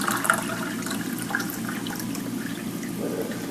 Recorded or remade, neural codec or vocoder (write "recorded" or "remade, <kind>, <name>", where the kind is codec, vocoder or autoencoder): recorded